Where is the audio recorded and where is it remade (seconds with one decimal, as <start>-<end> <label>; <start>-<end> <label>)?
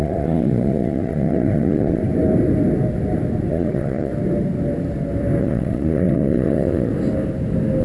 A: 0.0-2.0 remade; 2.0-3.5 recorded; 3.5-4.1 remade; 4.1-5.4 recorded; 5.4-6.9 remade; 6.9-7.8 recorded